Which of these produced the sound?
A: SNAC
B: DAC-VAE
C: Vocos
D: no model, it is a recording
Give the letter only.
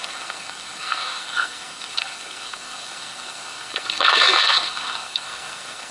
A